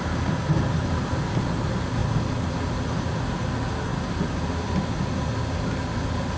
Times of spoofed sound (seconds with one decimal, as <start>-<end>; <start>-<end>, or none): none

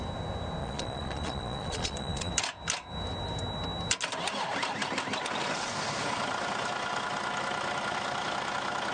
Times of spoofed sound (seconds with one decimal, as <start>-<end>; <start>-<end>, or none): 0.6-2.3

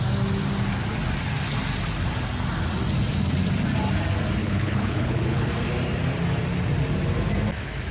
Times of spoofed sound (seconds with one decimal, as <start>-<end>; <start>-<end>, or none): 4.4-5.5

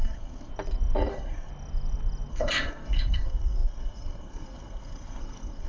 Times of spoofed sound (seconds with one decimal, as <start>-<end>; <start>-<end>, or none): 0.0-0.5; 1.1-1.5; 2.3-5.7

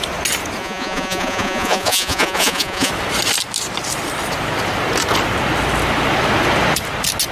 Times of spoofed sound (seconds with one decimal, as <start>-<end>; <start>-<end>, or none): 0.6-2.9

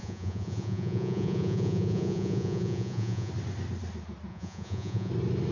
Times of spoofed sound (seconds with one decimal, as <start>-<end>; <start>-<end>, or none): 0.0-3.3; 4.3-5.1